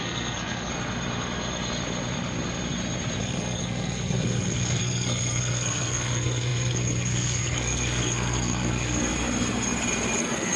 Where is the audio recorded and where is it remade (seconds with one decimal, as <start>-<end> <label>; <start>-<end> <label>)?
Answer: 0.0-0.7 remade; 0.7-3.2 recorded; 3.2-9.1 remade; 9.1-10.2 recorded; 10.2-10.6 remade